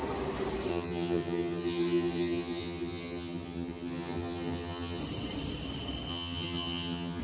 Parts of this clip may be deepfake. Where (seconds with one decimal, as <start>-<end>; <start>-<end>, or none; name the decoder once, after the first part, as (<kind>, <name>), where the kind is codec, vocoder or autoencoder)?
0.7-5.0 (vocoder, HiFi-GAN); 6.1-7.2